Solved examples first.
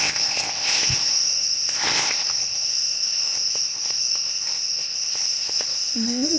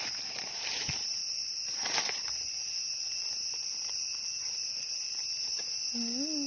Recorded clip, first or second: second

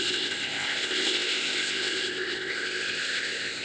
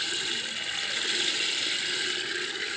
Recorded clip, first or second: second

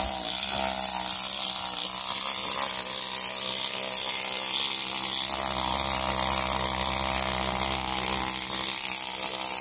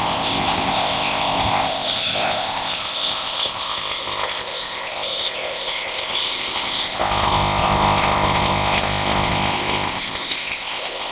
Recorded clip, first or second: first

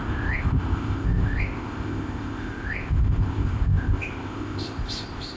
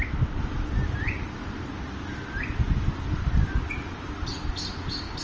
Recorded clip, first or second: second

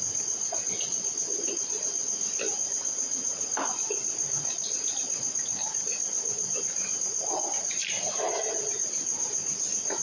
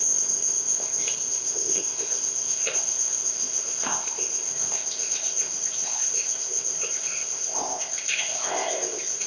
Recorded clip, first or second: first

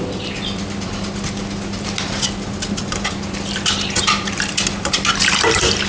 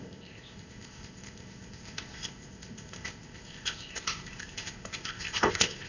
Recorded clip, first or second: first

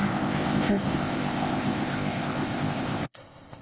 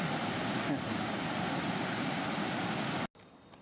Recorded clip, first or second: second